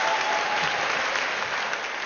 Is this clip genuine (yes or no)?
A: yes